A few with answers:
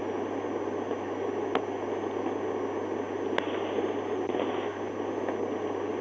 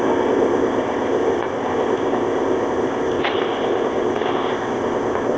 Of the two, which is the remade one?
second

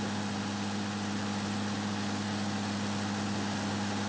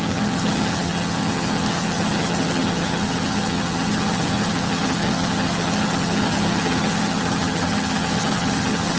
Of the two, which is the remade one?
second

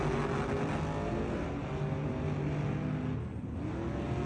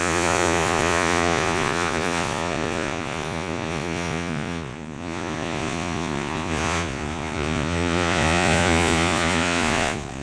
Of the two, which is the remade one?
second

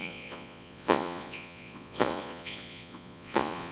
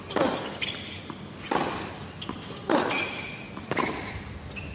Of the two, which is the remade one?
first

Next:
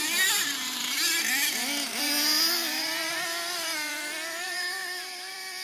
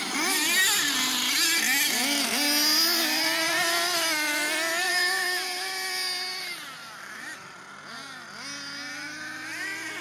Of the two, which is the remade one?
first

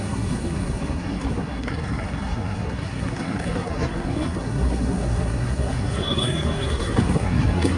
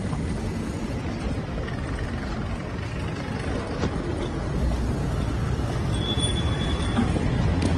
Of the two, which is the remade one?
first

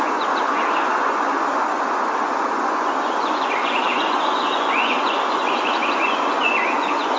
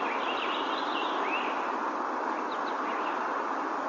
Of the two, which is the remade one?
first